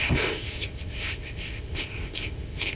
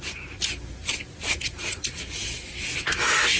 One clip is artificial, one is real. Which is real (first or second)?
second